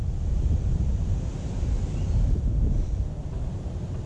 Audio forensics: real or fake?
real